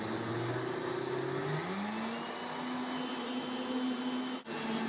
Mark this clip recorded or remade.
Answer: recorded